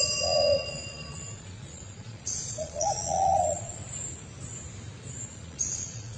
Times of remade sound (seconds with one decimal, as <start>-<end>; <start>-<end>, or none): 0.0-3.8; 5.2-6.2